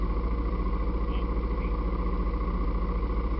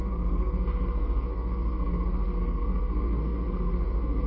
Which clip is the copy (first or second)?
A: second